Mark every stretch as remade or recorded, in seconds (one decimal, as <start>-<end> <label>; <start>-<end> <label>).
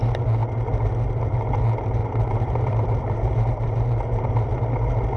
0.0-2.0 recorded; 2.0-4.6 remade; 4.6-5.2 recorded